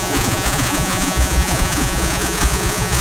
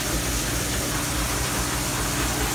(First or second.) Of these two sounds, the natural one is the second